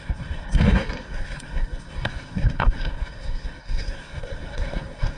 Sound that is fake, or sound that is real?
fake